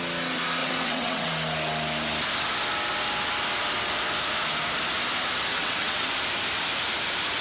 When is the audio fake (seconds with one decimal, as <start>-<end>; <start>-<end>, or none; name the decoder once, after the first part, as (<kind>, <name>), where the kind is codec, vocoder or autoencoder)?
0.6-1.3 (vocoder, WaveNeXt); 5.5-6.1